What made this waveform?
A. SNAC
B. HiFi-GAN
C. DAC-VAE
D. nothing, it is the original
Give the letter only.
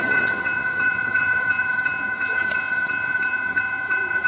B